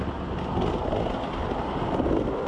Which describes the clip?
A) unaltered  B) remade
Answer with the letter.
A